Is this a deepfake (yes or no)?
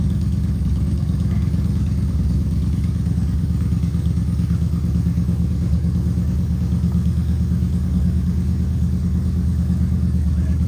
yes